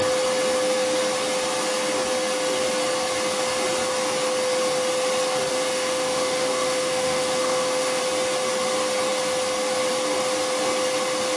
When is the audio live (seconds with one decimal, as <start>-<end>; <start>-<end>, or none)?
0.0-5.5; 8.0-11.4